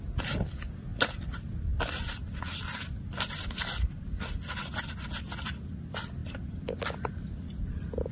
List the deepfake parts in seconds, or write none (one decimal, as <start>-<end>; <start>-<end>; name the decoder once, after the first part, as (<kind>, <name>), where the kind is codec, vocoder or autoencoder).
none